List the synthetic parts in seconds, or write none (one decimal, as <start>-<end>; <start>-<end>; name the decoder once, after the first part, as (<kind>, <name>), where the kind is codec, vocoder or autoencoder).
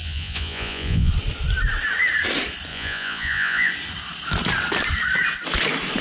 0.0-1.1 (vocoder, Vocos); 2.7-3.7